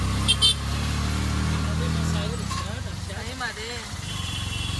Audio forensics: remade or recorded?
recorded